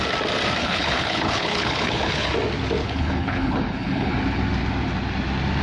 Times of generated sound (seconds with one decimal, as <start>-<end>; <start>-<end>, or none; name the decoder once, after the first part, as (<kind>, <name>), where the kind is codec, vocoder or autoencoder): 0.6-2.3 (codec, HILCodec); 2.8-4.1